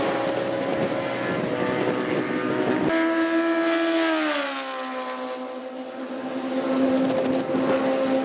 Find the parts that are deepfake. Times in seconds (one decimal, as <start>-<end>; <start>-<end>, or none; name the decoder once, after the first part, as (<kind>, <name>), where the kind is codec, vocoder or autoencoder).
none